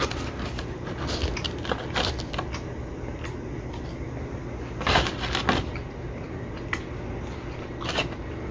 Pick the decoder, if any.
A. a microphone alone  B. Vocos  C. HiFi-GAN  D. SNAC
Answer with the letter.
A